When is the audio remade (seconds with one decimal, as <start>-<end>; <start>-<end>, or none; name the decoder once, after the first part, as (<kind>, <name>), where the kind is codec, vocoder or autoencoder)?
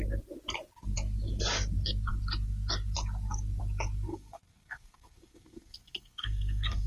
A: 4.1-6.9 (codec, SNAC)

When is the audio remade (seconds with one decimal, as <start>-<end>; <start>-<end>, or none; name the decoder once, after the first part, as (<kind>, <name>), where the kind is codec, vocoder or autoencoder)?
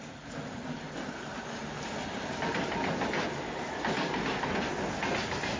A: none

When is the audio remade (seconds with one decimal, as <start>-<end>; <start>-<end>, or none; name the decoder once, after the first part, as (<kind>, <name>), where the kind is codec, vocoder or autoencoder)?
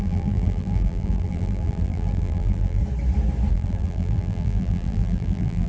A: 0.0-2.8 (vocoder, BigVGAN v2); 3.5-5.7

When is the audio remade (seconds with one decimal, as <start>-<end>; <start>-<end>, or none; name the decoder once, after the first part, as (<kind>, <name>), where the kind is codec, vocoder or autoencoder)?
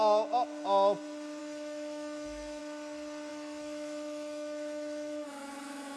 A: 1.4-2.6 (autoencoder, DAC-VAE); 3.3-6.0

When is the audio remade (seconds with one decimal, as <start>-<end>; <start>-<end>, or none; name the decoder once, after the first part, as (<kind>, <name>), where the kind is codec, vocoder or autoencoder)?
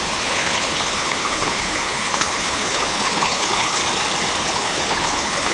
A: 0.0-3.8 (codec, HILCodec); 4.4-5.5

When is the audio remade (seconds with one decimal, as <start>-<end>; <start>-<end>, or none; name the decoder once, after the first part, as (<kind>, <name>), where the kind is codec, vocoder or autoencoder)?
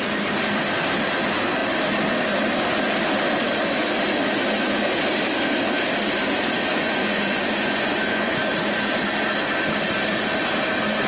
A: 6.7-8.4 (vocoder, Vocos)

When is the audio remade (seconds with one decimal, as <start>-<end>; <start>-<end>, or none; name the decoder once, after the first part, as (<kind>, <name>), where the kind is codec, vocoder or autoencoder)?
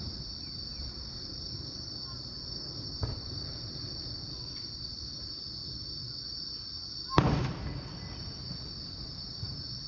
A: none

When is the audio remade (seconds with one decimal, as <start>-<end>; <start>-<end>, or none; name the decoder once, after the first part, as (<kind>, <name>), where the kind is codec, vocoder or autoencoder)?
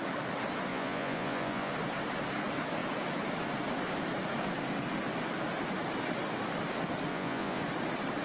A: 0.7-1.7 (vocoder, Vocos); 7.1-7.6